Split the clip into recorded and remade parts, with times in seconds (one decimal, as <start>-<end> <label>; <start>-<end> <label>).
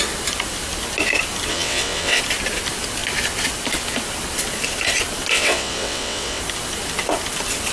0.0-1.5 recorded; 1.5-2.2 remade; 2.2-5.3 recorded; 5.3-6.4 remade; 6.4-7.7 recorded